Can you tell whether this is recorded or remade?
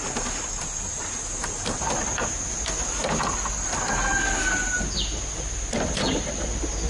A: recorded